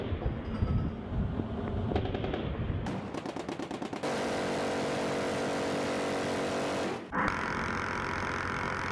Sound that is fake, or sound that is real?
real